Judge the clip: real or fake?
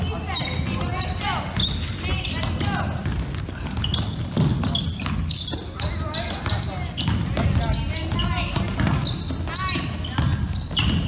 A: real